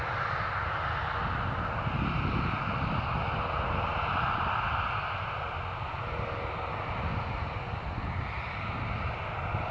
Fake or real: real